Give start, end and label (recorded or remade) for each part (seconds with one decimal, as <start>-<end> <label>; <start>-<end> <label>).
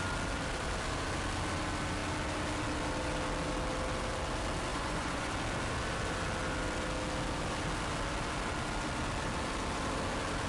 0.0-4.7 recorded; 4.7-5.3 remade; 5.3-10.5 recorded